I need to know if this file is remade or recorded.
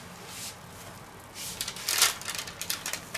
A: recorded